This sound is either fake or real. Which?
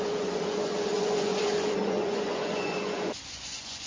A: fake